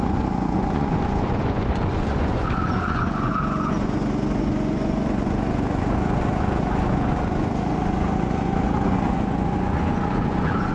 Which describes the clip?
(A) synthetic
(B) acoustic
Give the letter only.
A